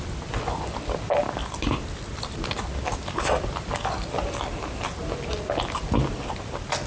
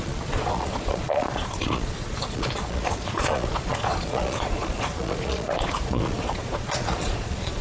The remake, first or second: second